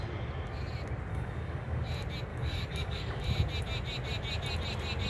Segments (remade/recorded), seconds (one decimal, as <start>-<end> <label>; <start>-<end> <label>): 0.0-1.1 recorded; 1.1-1.9 remade; 1.9-2.3 recorded; 2.3-3.2 remade; 3.2-5.1 recorded